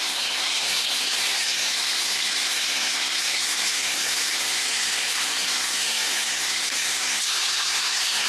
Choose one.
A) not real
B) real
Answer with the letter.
A